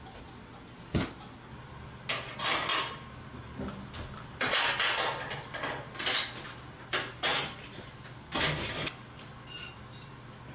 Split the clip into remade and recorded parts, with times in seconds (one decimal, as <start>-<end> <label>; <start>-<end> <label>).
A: 0.0-2.7 recorded; 2.7-3.6 remade; 3.6-10.5 recorded